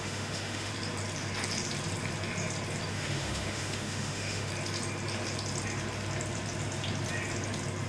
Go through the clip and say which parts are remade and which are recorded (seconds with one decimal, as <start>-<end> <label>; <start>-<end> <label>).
0.0-0.7 remade; 0.7-2.9 recorded; 2.9-4.5 remade; 4.5-7.9 recorded